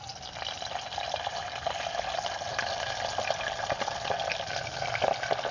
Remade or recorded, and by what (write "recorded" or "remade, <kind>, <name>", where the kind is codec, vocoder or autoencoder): recorded